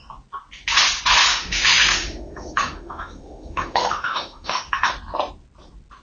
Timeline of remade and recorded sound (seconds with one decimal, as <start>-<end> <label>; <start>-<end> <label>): 0.0-1.3 recorded; 1.3-4.9 remade; 4.9-6.0 recorded